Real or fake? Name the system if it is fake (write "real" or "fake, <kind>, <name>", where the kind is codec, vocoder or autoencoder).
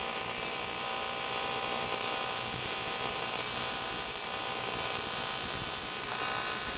fake, vocoder, BigVGAN v2